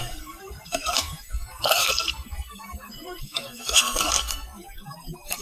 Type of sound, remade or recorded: remade